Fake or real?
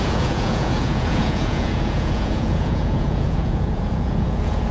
fake